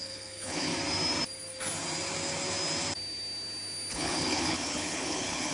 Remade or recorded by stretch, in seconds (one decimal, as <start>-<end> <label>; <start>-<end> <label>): 0.0-0.7 remade; 0.7-3.9 recorded; 3.9-5.5 remade